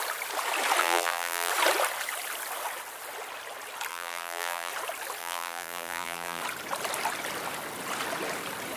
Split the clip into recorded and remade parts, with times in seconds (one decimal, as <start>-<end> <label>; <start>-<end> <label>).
0.0-0.8 recorded; 0.8-1.5 remade; 1.5-3.9 recorded; 3.9-4.7 remade; 4.7-5.2 recorded; 5.2-6.4 remade; 6.4-8.8 recorded